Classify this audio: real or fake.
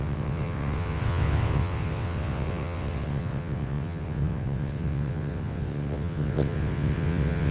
fake